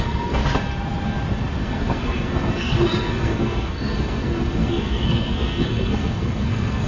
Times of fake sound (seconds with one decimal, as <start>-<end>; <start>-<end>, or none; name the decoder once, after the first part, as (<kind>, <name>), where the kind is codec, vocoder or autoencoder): 0.0-0.4 (codec, SNAC); 1.6-6.9